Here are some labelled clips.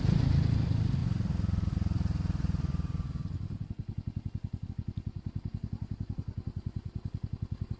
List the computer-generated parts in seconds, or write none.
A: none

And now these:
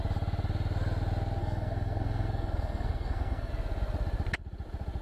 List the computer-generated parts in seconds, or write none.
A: 1.4-3.5 (codec, SNAC)

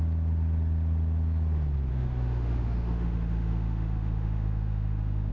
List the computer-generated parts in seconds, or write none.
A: 1.9-5.3 (autoencoder, DAC-VAE)

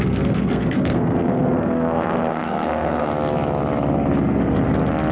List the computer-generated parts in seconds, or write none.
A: 0.0-3.1 (codec, SNAC)

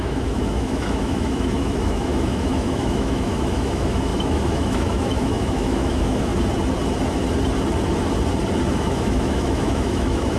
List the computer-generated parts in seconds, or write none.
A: 0.0-6.3 (autoencoder, DAC-VAE); 8.7-10.4

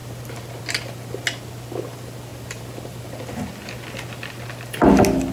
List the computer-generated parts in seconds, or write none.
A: 2.3-3.2 (vocoder, BigVGAN v2)